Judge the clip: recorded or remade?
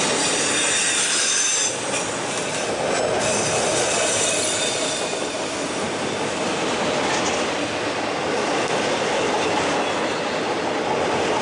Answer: recorded